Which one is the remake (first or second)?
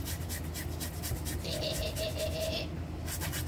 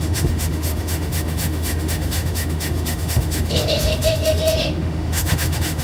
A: second